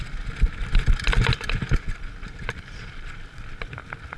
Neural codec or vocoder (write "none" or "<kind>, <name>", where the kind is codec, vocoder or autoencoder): none